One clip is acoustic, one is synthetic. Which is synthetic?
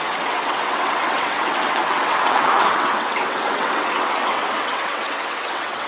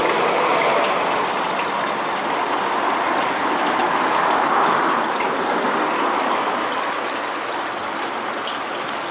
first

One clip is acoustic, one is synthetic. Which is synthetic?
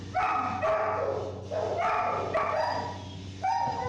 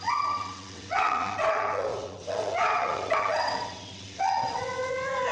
second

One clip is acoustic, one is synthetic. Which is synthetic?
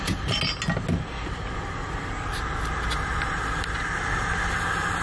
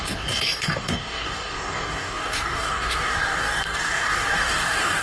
second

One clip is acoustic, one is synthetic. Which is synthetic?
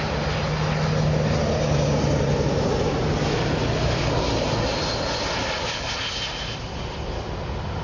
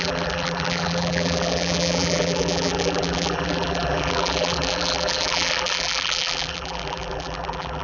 second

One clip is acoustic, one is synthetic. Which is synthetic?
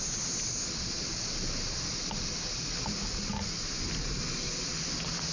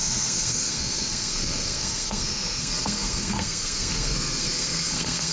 second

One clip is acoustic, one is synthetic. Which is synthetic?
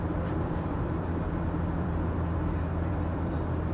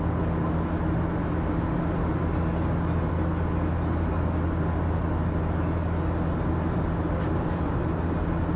first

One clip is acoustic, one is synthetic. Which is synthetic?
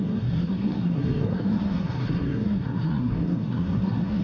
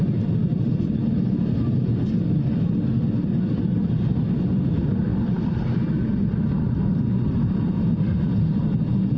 first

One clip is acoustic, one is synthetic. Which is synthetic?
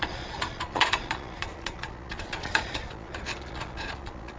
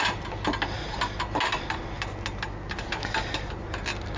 first